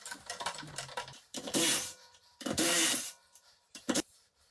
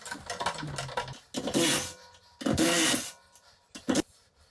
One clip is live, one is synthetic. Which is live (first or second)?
second